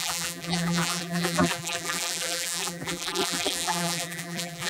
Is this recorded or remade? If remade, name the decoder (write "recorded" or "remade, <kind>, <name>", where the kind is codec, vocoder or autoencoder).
remade, vocoder, BigVGAN v2